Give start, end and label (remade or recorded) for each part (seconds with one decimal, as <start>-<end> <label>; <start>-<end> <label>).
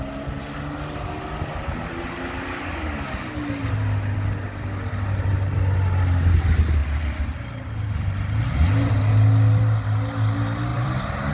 0.0-10.7 recorded; 10.7-11.3 remade